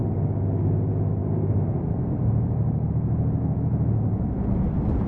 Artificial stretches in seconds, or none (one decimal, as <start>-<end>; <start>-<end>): 1.2-2.9